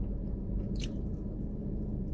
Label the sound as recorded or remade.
remade